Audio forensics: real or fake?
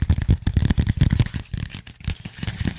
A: real